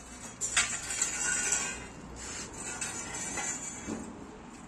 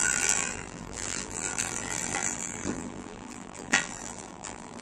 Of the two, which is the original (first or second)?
first